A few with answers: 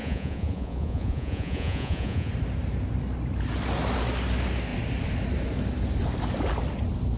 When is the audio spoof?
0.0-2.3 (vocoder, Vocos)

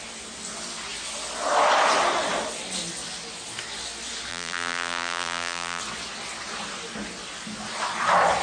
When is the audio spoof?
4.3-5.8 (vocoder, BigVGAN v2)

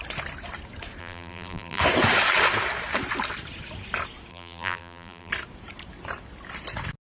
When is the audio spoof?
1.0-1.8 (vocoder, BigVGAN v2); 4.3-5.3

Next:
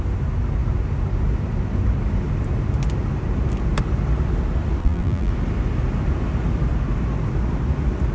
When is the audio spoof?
4.8-5.3 (vocoder, BigVGAN v2)

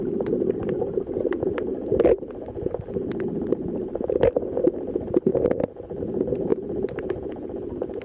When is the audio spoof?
none

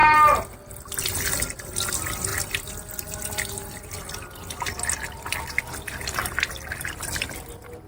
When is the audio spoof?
none

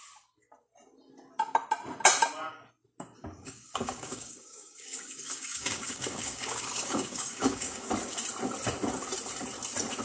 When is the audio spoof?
3.4-7.9 (codec, DAC)